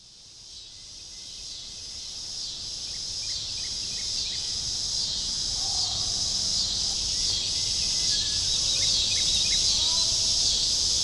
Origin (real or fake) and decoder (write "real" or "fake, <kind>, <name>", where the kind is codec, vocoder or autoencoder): real